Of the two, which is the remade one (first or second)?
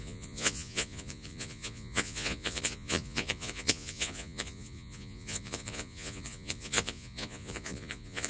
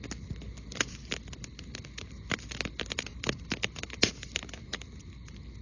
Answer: first